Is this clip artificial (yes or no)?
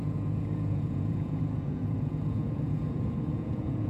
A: yes